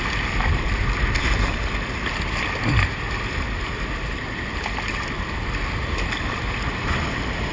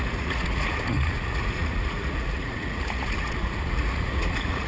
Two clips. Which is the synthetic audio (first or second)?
second